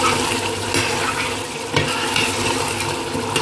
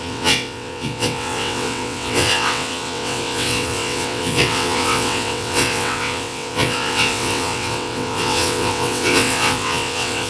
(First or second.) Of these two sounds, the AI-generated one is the second